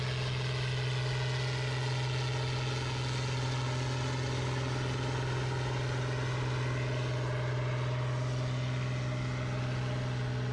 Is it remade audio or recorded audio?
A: recorded